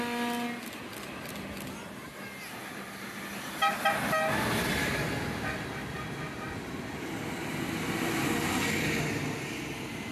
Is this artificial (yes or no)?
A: no